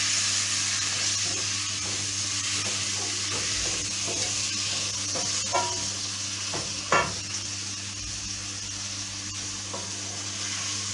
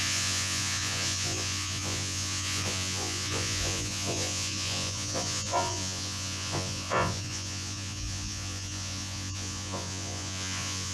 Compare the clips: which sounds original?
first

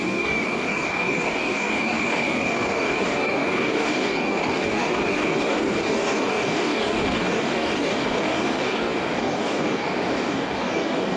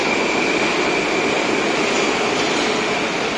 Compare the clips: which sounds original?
second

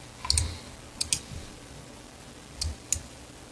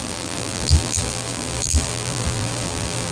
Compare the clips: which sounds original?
first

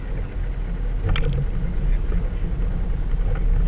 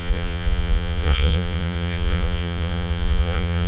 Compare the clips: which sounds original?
first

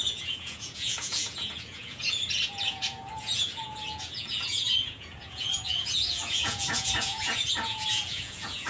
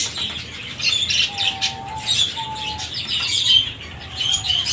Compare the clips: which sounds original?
second